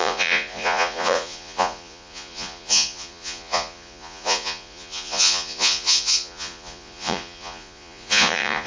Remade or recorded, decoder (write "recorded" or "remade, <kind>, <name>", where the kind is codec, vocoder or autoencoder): remade, vocoder, Vocos